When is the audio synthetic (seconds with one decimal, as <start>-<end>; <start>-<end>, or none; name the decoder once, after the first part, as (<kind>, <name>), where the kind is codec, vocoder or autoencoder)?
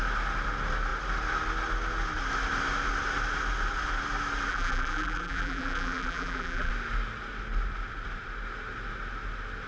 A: 4.5-6.7 (vocoder, BigVGAN v2)